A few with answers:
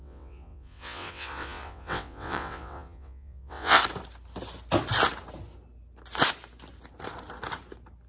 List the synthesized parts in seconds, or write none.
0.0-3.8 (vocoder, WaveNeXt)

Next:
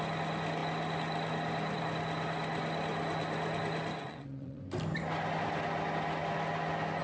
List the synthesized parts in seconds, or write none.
4.0-4.6 (vocoder, WaveNeXt)

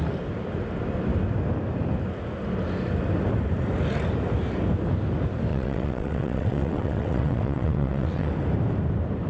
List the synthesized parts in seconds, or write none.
5.5-8.3 (vocoder, WaveNeXt)

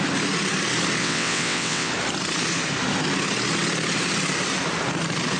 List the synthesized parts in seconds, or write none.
1.0-1.9 (vocoder, WaveNeXt)

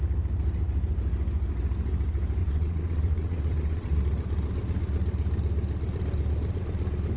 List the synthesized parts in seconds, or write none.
2.4-4.0 (vocoder, WaveNeXt)

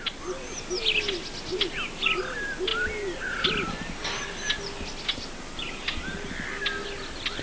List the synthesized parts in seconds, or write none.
none

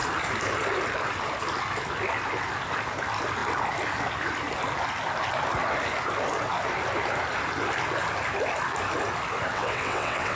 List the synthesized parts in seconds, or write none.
9.5-10.4 (vocoder, WaveNeXt)